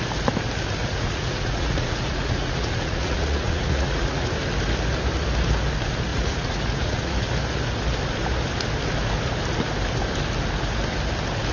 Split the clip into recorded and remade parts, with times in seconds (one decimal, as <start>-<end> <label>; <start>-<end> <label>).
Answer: 0.0-0.8 recorded; 0.8-4.3 remade; 4.3-6.1 recorded; 6.1-7.3 remade; 7.3-11.5 recorded